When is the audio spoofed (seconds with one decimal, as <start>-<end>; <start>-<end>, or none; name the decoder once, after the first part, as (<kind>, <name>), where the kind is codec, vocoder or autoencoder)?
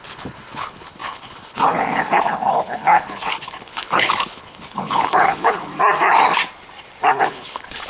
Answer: 0.0-5.7 (codec, HILCodec); 7.2-7.9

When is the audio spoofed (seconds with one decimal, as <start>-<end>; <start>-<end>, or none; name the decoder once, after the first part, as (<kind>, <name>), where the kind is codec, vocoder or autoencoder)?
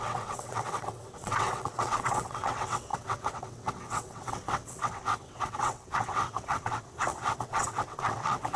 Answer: 0.0-8.6 (vocoder, WaveNeXt)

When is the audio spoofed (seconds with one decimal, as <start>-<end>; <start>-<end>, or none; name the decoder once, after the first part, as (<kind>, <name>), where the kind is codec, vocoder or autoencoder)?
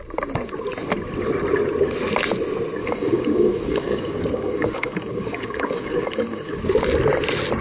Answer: 2.8-6.6 (codec, DAC)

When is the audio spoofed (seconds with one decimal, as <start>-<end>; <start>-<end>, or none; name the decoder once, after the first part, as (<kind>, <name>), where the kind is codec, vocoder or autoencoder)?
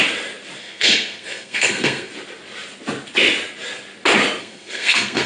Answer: 0.6-2.1 (codec, SNAC); 4.4-5.3